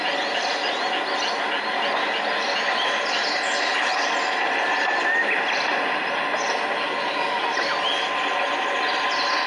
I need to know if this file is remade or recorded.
recorded